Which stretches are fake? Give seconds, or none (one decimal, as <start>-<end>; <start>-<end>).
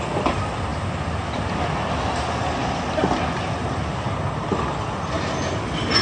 0.7-1.7